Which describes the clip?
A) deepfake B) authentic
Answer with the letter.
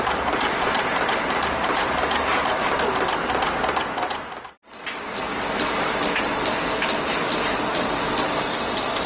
B